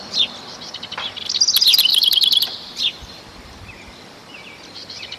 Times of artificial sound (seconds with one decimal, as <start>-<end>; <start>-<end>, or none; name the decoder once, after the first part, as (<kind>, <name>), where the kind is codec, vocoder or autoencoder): 1.9-3.2 (vocoder, BigVGAN v2)